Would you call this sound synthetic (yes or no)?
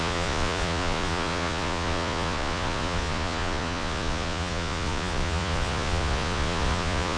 yes